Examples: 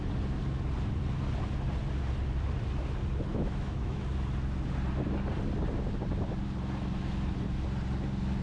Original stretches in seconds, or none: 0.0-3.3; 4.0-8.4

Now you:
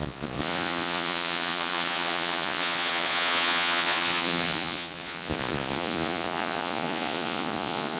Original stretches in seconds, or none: none

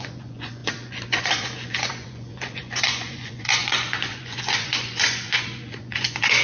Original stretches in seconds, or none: none

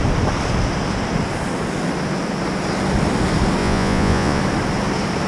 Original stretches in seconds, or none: 0.0-3.6; 4.4-5.3